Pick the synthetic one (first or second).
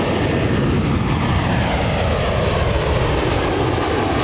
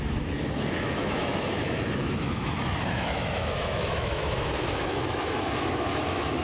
second